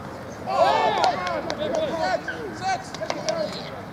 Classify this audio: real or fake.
real